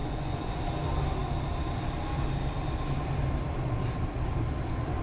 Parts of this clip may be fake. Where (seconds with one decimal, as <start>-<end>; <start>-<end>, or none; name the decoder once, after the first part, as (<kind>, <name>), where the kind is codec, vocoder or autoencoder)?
0.0-0.6 (vocoder, Vocos)